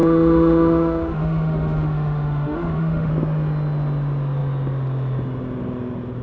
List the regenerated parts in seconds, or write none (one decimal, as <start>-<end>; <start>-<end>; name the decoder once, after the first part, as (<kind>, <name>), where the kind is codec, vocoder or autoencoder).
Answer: 0.0-3.1 (autoencoder, DAC-VAE)